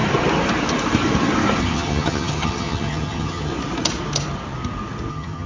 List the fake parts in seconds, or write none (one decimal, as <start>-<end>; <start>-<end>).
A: 1.6-3.5; 5.1-5.5